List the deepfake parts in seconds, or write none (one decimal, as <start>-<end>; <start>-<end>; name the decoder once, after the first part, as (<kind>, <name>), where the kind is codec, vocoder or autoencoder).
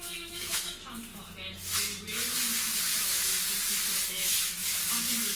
0.0-1.1 (autoencoder, DAC-VAE); 2.8-3.3; 4.1-4.6